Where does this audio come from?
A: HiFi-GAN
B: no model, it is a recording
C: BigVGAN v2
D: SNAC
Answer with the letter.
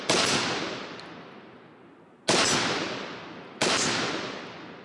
B